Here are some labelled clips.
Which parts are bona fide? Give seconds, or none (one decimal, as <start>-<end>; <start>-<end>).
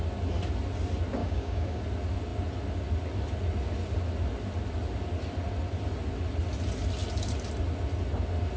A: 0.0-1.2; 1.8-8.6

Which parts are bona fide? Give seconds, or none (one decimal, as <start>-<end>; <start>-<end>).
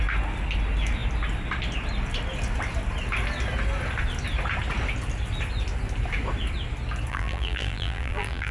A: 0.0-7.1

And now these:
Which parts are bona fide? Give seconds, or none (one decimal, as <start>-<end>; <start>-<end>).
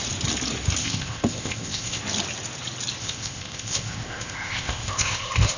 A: 0.0-0.8; 2.0-3.0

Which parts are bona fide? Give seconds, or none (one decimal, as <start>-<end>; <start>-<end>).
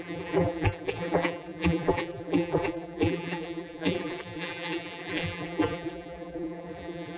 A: none